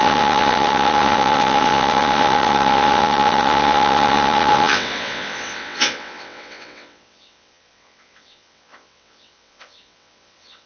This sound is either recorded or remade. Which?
remade